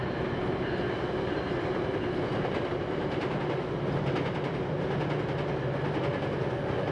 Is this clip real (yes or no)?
yes